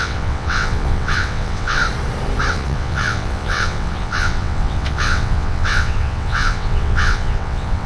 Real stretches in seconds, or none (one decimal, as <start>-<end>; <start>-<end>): 1.8-2.5

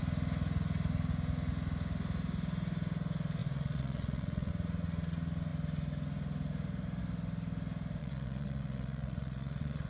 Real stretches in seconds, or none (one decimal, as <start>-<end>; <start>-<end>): 0.0-3.4; 4.5-8.0

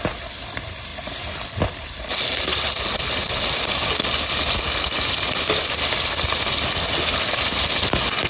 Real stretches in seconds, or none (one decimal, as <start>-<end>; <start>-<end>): 0.0-8.3

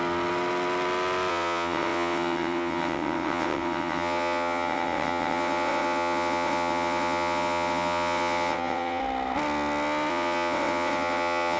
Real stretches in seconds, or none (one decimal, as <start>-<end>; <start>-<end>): 0.0-1.3; 9.0-10.1